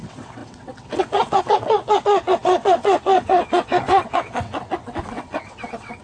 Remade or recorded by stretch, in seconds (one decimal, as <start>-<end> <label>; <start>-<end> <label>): 0.0-6.0 remade